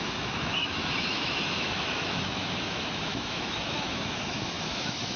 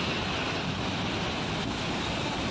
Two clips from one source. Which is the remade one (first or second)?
first